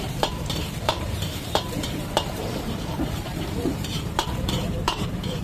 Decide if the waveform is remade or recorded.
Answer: remade